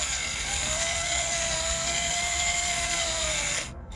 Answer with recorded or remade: remade